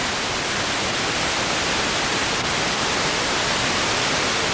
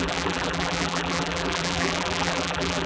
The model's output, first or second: second